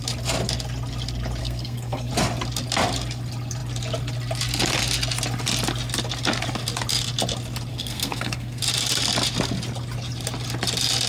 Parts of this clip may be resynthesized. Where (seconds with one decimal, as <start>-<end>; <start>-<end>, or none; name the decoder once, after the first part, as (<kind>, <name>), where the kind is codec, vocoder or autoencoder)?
1.4-2.1 (codec, SNAC); 7.7-8.6